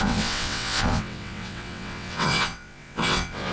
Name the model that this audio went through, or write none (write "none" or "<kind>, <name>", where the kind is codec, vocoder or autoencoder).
vocoder, WaveNeXt